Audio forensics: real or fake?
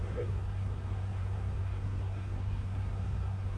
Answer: fake